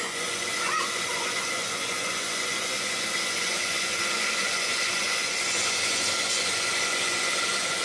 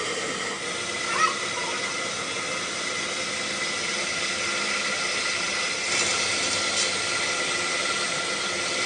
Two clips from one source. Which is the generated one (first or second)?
first